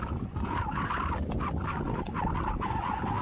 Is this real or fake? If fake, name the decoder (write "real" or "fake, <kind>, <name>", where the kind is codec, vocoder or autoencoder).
real